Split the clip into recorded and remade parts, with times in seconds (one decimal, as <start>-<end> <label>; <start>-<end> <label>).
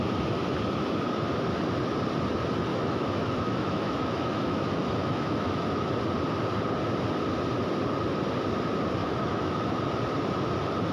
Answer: 0.0-2.7 recorded; 2.7-5.9 remade; 5.9-9.0 recorded; 9.0-9.7 remade; 9.7-10.9 recorded